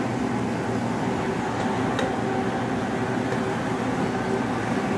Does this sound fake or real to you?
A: real